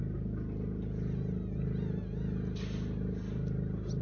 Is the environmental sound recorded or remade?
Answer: recorded